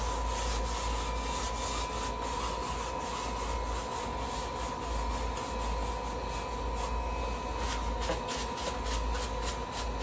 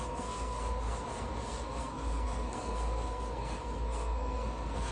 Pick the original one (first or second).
first